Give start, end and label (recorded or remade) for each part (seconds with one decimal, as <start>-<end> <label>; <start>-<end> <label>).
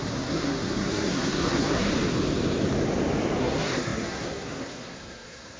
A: 0.0-1.9 remade; 1.9-3.4 recorded; 3.4-5.6 remade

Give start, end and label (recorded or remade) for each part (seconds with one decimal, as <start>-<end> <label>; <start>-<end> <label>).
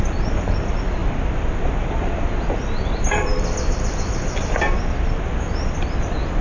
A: 0.0-6.4 recorded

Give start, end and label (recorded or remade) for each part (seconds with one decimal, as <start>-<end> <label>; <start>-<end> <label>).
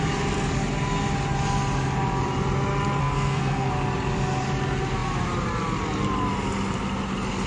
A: 0.0-3.0 recorded; 3.0-3.7 remade; 3.7-7.5 recorded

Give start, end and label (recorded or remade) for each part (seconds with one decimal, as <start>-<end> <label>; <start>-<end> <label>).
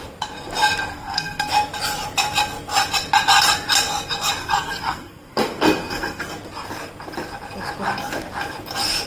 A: 0.0-0.9 recorded; 0.9-1.5 remade; 1.5-4.4 recorded; 4.4-6.2 remade; 6.2-9.1 recorded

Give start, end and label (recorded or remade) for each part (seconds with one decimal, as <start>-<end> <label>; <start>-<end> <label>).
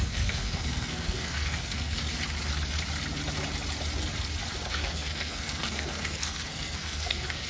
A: 0.0-2.0 remade; 2.0-4.7 recorded; 4.7-7.5 remade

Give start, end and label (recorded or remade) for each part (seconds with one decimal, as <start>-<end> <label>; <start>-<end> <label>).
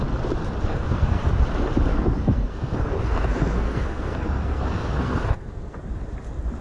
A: 0.0-0.7 recorded; 0.7-1.3 remade; 1.3-1.9 recorded; 1.9-5.8 remade; 5.8-6.6 recorded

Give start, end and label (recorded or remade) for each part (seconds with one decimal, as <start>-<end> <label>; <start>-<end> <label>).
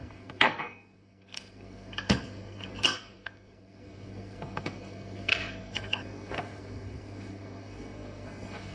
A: 0.0-8.7 remade